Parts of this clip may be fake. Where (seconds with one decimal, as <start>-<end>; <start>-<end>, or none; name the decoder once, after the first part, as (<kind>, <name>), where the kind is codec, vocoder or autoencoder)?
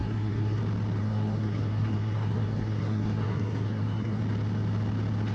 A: 0.0-0.6 (codec, SNAC); 1.0-4.2